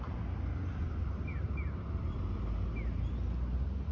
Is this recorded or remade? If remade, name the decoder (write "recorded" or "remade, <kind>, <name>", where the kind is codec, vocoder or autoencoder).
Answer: recorded